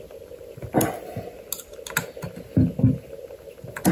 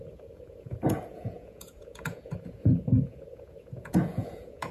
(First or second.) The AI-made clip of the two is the second